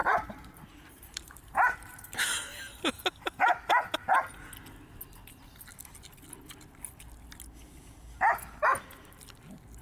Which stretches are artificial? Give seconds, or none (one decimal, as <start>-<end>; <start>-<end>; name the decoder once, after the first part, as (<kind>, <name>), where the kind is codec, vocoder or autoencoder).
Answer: 0.0-2.6 (vocoder, BigVGAN v2)